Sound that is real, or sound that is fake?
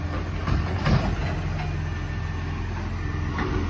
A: real